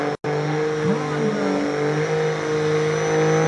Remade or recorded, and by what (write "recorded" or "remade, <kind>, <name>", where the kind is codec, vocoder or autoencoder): recorded